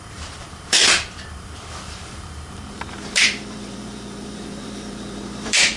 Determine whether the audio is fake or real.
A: fake